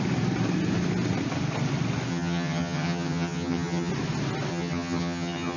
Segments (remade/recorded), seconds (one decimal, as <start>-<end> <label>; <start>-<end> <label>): 0.0-2.1 recorded; 2.1-3.9 remade; 3.9-4.5 recorded; 4.5-5.6 remade

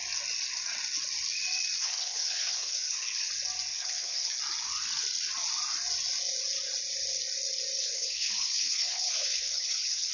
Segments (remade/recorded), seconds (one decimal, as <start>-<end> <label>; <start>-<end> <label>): 0.0-1.8 recorded; 1.8-3.3 remade; 3.3-3.7 recorded; 3.7-4.4 remade; 4.4-7.8 recorded; 7.8-10.1 remade

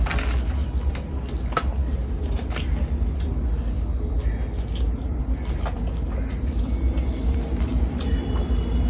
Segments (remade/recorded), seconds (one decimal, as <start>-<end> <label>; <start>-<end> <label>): 0.0-8.9 recorded

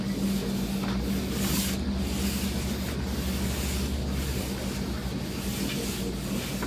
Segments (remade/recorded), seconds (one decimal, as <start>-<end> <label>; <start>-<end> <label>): 0.0-6.7 recorded

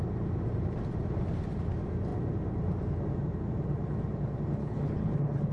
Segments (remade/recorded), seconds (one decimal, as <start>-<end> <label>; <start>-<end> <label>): 0.0-4.6 recorded; 4.6-5.5 remade

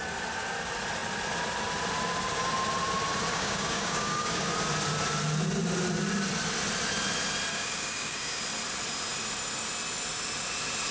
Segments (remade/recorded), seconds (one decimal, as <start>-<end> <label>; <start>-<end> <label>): 0.0-3.3 recorded; 3.3-4.5 remade; 4.5-7.5 recorded; 7.5-8.4 remade; 8.4-10.9 recorded

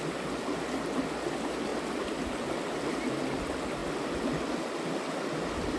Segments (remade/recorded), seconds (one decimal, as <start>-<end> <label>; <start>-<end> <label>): 0.0-5.8 recorded

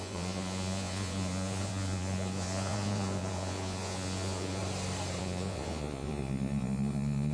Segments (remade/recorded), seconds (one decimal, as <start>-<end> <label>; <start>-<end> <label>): 0.0-4.6 remade; 4.6-5.2 recorded; 5.2-7.3 remade